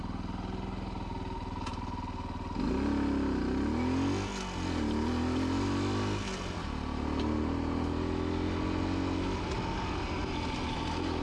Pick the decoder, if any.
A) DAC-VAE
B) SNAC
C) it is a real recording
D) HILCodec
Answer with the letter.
C